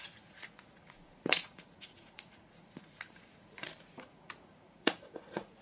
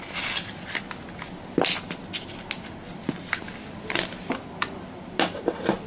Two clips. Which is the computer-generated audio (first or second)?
first